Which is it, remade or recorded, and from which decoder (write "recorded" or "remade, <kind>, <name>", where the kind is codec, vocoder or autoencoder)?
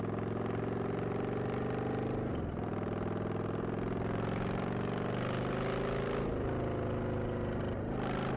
recorded